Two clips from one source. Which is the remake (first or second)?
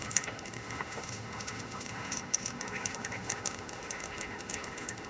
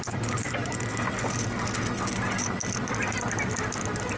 first